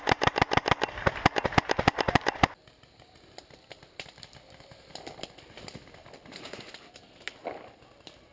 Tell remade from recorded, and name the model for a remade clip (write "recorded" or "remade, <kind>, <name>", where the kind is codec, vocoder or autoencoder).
recorded